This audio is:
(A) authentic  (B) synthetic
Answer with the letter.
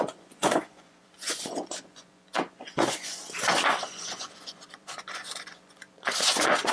B